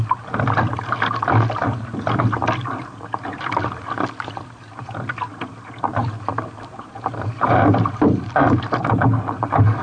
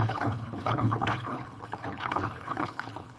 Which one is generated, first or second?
second